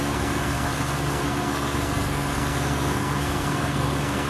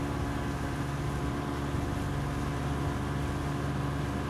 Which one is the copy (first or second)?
first